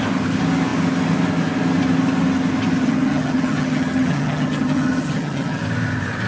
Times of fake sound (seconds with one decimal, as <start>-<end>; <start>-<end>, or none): 2.8-5.6